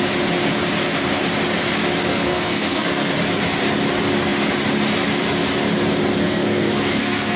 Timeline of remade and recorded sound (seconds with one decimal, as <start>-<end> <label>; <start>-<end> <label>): 0.0-2.1 recorded; 2.1-3.1 remade; 3.1-6.2 recorded; 6.2-7.4 remade